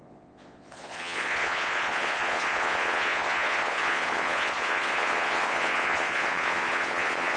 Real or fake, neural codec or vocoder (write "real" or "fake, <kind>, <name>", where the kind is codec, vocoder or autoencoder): fake, vocoder, Vocos